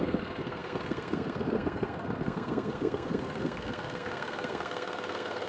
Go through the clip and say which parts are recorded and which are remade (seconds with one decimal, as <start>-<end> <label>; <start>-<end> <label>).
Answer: 0.0-5.5 remade